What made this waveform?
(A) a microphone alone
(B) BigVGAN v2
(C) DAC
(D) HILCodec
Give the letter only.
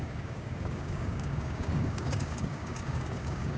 C